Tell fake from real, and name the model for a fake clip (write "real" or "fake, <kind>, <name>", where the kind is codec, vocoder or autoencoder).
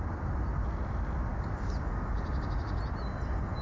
real